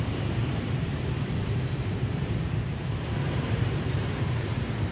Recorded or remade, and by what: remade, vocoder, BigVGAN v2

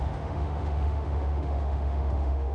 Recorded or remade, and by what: remade, autoencoder, DAC-VAE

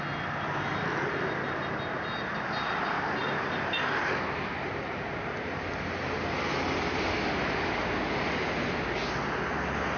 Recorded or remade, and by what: recorded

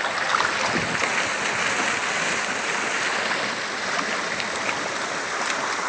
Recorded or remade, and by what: recorded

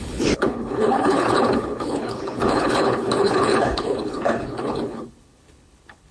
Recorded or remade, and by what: remade, codec, HILCodec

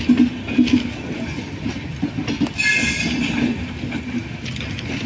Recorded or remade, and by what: recorded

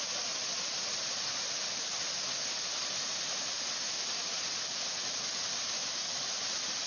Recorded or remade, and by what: recorded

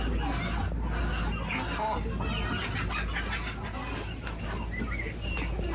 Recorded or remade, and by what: recorded